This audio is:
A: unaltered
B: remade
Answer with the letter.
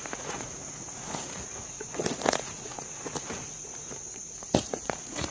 B